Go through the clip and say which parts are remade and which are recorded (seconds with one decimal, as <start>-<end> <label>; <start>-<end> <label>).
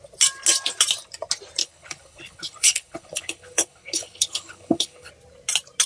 0.0-1.6 recorded; 1.6-5.1 remade; 5.1-5.9 recorded